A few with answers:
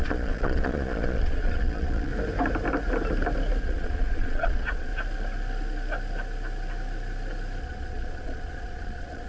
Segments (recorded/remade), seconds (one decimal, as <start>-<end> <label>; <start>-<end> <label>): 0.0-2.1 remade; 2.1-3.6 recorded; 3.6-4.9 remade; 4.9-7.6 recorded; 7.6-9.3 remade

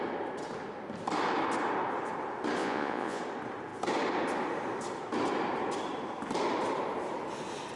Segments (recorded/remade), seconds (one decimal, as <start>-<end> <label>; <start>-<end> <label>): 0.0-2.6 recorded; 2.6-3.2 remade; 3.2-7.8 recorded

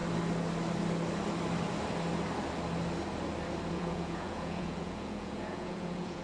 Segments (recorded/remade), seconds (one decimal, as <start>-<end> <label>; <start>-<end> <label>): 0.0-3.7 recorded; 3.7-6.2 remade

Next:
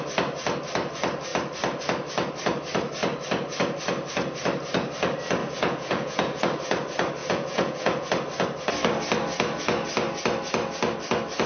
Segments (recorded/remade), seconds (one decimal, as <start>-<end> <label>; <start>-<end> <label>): 0.0-5.4 recorded; 5.4-6.4 remade; 6.4-7.2 recorded; 7.2-8.1 remade; 8.1-11.5 recorded

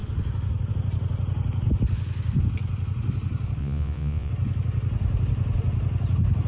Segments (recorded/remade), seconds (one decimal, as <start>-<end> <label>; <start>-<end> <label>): 0.0-3.6 recorded; 3.6-4.3 remade; 4.3-6.5 recorded

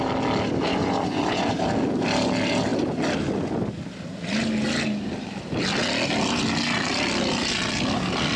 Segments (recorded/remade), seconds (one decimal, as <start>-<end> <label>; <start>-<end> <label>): 0.0-0.7 recorded; 0.7-1.5 remade; 1.5-8.4 recorded